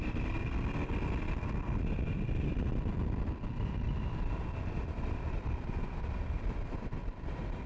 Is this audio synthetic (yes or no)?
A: no